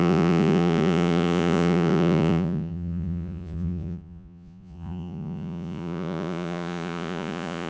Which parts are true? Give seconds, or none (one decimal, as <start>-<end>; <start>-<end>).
none